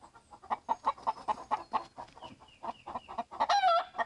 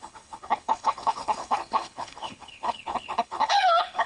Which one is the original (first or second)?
first